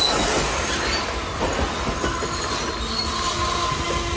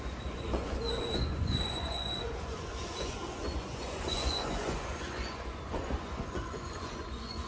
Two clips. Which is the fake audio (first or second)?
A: second